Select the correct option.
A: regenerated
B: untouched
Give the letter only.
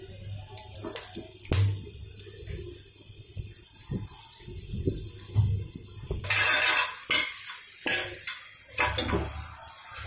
B